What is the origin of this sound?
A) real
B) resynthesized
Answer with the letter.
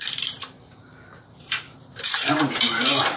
B